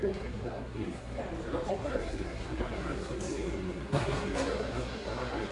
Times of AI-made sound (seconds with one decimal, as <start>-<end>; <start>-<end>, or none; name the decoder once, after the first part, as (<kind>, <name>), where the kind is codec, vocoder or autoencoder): 0.0-1.2 (codec, SNAC); 1.7-5.5